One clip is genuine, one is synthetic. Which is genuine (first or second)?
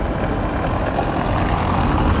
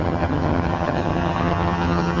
first